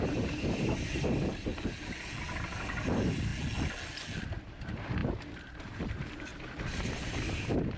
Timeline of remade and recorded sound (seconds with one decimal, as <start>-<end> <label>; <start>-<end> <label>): 0.0-1.5 remade; 1.5-2.2 recorded; 2.2-3.3 remade; 3.3-4.6 recorded; 4.6-5.0 remade; 5.0-5.6 recorded; 5.6-7.8 remade